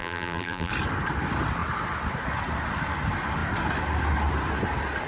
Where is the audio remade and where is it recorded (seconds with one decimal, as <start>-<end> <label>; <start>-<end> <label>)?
0.0-0.7 remade; 0.7-5.1 recorded